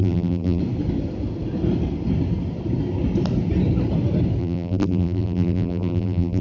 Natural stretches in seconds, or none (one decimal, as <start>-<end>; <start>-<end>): 0.6-4.4